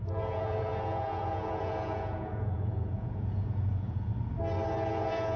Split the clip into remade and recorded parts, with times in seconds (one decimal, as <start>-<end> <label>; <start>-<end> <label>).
0.0-4.1 remade; 4.1-4.9 recorded; 4.9-5.4 remade